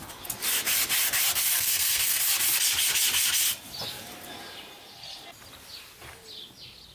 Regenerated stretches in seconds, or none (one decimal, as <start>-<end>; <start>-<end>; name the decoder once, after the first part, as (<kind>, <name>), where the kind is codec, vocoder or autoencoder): 1.5-2.2 (codec, SNAC)